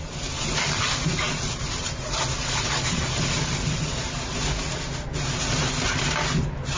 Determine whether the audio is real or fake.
real